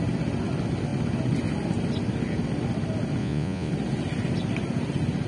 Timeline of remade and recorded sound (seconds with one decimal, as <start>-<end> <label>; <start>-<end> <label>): 0.0-3.2 recorded; 3.2-3.7 remade; 3.7-5.3 recorded